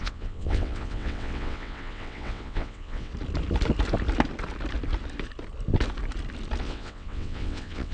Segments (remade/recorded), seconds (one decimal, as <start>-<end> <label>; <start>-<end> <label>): 0.0-3.1 remade; 3.1-6.6 recorded; 6.6-7.9 remade